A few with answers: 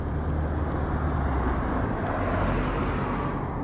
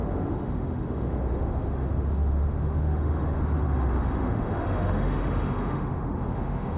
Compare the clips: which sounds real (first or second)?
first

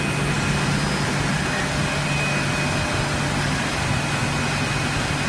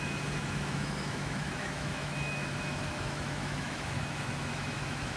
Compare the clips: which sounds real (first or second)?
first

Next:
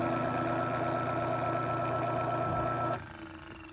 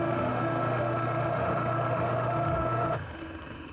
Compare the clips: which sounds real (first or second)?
first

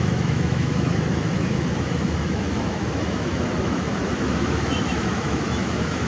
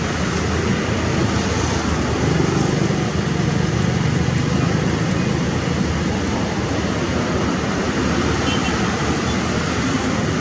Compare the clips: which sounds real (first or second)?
second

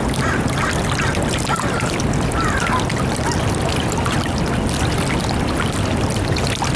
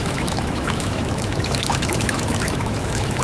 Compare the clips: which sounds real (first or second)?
first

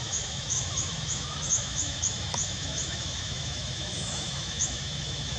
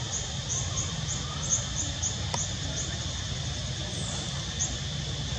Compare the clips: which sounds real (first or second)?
second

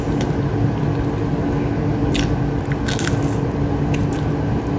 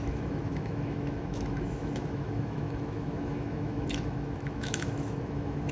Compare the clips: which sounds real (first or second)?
first